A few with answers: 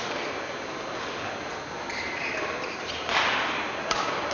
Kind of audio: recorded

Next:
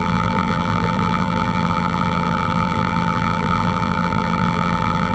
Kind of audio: remade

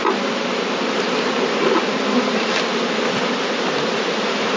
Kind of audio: recorded